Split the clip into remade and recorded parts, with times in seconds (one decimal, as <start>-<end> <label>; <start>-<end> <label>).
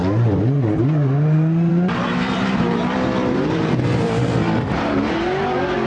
0.0-1.7 recorded; 1.7-5.2 remade; 5.2-5.9 recorded